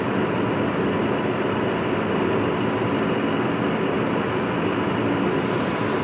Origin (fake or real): real